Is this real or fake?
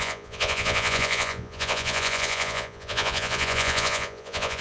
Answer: fake